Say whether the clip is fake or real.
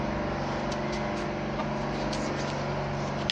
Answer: real